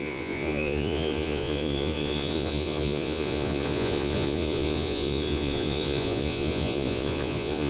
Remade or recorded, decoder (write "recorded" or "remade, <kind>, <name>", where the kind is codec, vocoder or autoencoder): remade, vocoder, Vocos